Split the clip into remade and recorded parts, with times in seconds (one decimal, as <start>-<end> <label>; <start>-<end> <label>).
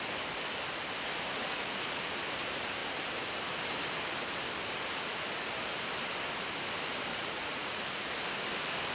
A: 0.0-1.4 recorded; 1.4-2.0 remade; 2.0-7.1 recorded; 7.1-7.8 remade; 7.8-8.9 recorded